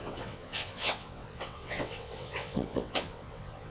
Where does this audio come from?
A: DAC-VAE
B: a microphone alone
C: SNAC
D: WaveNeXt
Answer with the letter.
D